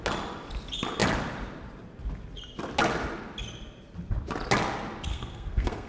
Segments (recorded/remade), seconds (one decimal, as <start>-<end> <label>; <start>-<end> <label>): 0.0-5.1 recorded; 5.1-5.9 remade